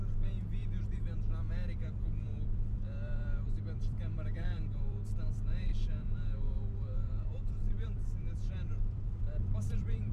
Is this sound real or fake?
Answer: fake